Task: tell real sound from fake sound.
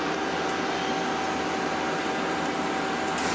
real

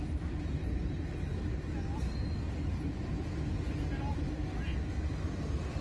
real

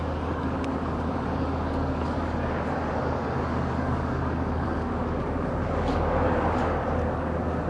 fake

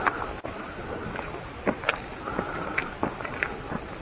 real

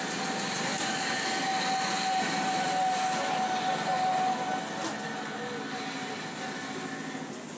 real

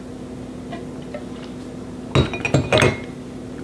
real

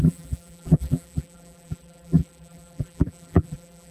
fake